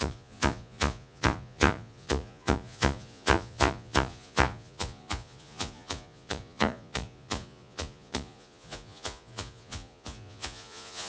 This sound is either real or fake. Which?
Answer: fake